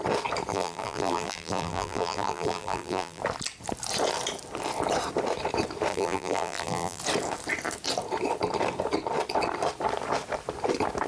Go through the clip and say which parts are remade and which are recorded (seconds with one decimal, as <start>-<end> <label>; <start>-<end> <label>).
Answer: 0.0-0.5 recorded; 0.5-3.2 remade; 3.2-5.9 recorded; 5.9-7.0 remade; 7.0-11.1 recorded